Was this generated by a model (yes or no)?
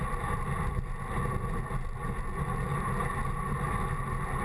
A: no